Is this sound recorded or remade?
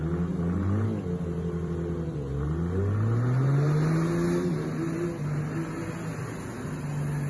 recorded